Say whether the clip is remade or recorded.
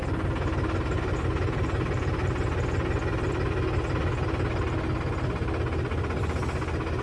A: recorded